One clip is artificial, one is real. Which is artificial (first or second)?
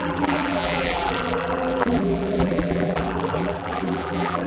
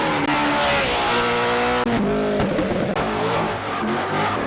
first